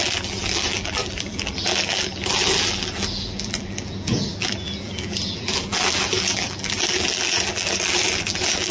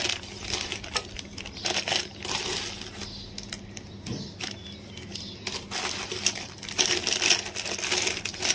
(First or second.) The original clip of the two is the second